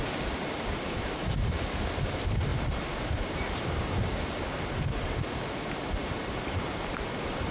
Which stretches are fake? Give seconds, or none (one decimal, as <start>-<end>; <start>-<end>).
none